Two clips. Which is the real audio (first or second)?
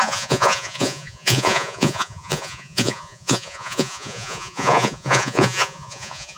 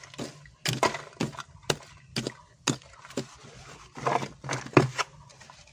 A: second